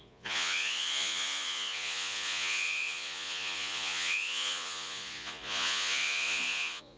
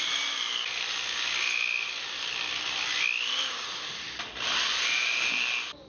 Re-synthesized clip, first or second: first